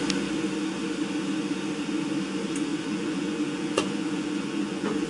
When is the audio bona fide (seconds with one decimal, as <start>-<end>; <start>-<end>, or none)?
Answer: 0.0-2.7